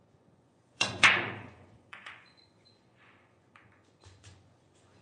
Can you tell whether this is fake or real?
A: fake